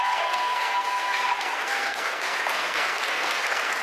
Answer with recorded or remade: remade